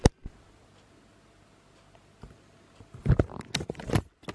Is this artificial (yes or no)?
no